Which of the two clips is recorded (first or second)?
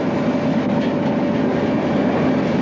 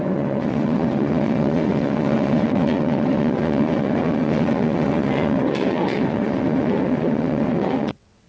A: first